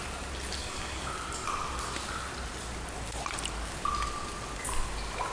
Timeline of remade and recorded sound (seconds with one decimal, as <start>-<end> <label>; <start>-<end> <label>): 0.0-0.6 recorded; 0.6-1.1 remade; 1.1-5.3 recorded